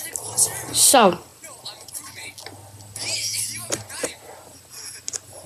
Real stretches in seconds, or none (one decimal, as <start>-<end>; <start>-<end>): 0.0-1.3; 4.6-5.5